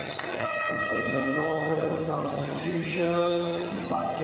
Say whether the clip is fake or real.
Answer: fake